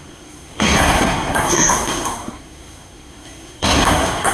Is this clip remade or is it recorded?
remade